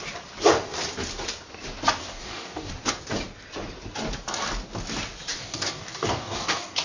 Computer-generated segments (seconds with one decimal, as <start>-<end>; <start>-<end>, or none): 2.0-2.7; 5.3-6.8